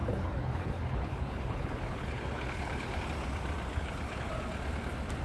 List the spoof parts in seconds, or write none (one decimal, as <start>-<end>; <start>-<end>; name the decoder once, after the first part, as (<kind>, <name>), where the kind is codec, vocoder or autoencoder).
0.0-3.0 (codec, HILCodec); 3.7-4.3